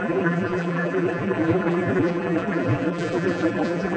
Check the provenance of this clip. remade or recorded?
remade